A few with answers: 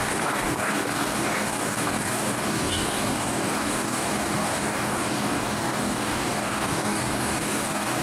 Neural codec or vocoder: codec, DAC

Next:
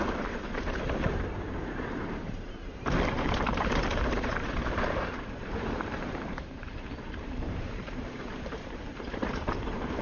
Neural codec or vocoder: vocoder, BigVGAN v2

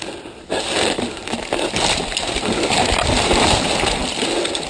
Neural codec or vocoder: none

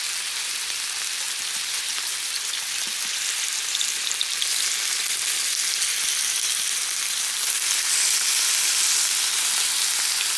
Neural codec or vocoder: none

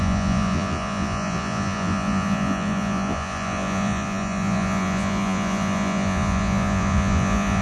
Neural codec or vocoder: vocoder, Vocos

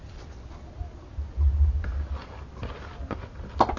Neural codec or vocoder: none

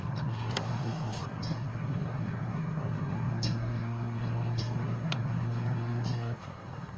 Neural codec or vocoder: codec, SNAC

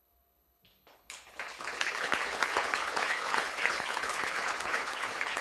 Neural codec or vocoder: codec, HILCodec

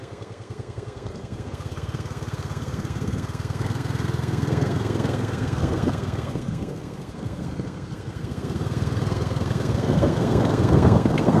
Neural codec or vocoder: codec, SNAC